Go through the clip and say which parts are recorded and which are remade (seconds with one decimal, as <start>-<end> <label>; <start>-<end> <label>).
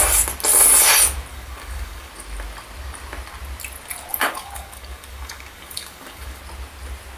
0.0-1.3 recorded; 1.3-2.1 remade; 2.1-4.1 recorded; 4.1-6.4 remade; 6.4-7.2 recorded